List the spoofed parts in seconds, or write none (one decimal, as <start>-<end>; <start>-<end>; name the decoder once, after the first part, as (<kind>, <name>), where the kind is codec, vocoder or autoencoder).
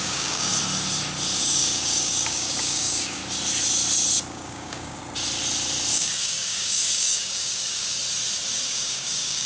0.0-0.5 (codec, DAC); 1.4-3.2; 4.3-5.0; 5.9-8.0; 8.7-9.5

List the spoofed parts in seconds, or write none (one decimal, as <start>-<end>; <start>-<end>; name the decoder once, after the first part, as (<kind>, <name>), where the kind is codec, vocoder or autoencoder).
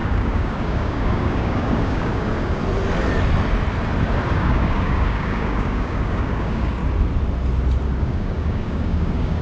0.0-2.6 (codec, DAC); 4.3-6.8; 8.0-9.4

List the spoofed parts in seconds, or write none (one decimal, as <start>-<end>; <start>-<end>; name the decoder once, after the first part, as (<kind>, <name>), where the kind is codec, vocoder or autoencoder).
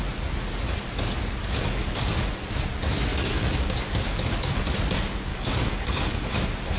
1.4-2.3 (codec, DAC); 3.1-4.6; 5.3-6.3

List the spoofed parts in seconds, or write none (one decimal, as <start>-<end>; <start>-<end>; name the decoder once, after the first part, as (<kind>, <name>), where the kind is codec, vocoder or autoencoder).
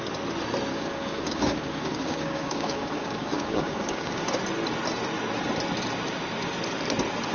0.7-4.4 (codec, DAC)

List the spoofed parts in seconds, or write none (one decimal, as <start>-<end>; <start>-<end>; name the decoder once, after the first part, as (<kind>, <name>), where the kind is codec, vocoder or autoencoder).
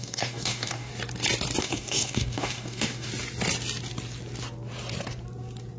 0.0-0.9 (codec, DAC); 1.6-3.1